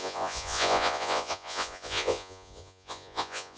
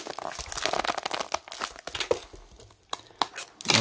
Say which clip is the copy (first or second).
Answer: first